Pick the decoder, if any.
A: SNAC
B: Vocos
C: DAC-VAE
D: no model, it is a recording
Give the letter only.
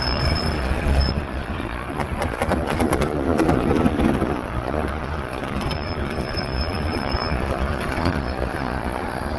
B